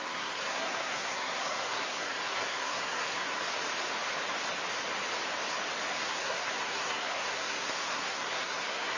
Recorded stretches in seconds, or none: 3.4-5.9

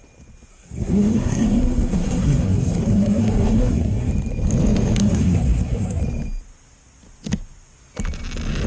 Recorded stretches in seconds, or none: 0.0-0.5; 4.1-5.0; 6.0-8.7